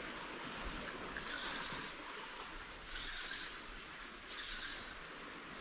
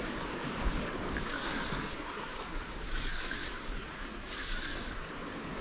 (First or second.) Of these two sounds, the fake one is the second